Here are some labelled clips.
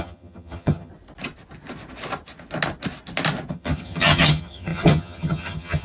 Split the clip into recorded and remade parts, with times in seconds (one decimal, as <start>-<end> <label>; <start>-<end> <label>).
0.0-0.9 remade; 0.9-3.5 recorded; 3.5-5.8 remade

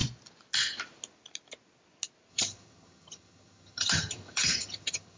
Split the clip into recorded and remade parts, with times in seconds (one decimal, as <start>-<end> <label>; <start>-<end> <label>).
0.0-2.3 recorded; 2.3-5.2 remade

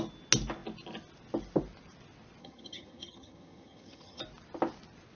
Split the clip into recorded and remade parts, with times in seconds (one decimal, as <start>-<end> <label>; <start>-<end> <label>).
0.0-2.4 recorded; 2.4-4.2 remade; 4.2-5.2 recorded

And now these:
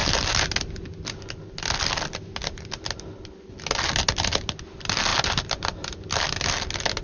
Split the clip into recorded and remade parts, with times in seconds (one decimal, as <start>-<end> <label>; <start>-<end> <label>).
0.0-7.0 recorded

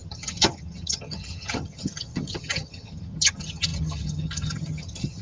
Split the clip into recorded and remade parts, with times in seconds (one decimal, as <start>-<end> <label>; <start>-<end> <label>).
0.0-5.2 remade

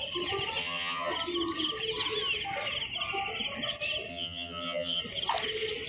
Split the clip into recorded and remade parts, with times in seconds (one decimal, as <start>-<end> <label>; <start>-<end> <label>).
0.0-0.6 recorded; 0.6-1.1 remade; 1.1-4.1 recorded; 4.1-5.0 remade; 5.0-5.9 recorded

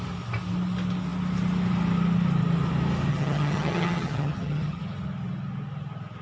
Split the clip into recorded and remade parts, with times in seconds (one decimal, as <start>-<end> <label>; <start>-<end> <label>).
0.0-3.1 recorded; 3.1-4.8 remade; 4.8-6.2 recorded

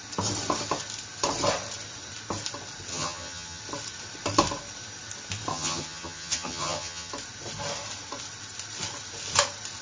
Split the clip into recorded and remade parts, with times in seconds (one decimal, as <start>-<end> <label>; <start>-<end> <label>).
0.0-2.9 recorded; 2.9-3.6 remade; 3.6-5.5 recorded; 5.5-7.1 remade; 7.1-9.8 recorded